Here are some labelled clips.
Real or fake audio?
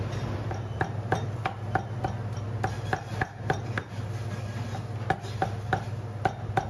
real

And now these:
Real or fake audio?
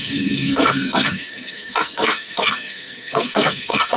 fake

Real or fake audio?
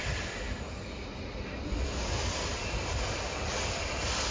real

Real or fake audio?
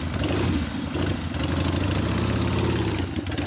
real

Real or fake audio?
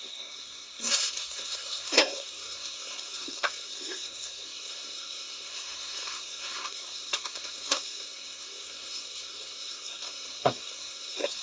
fake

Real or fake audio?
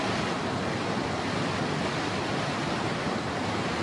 real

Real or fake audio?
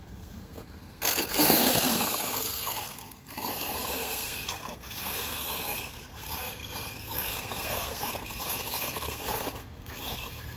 fake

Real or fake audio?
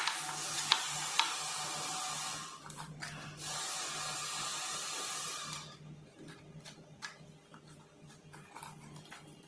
real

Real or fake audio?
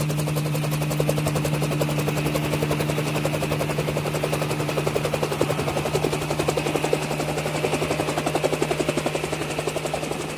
real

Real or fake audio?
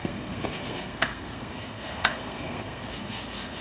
fake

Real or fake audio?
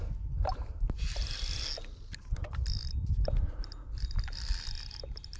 real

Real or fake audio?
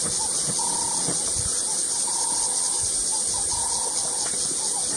real